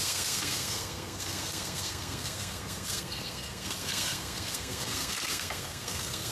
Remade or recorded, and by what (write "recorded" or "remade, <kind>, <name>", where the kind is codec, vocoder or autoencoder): remade, codec, SNAC